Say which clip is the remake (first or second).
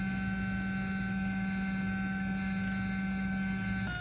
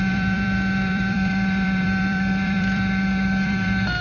second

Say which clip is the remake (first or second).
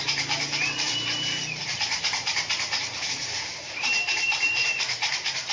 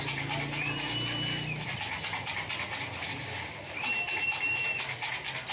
first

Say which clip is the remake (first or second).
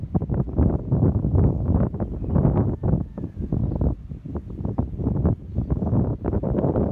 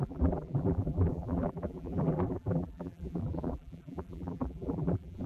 second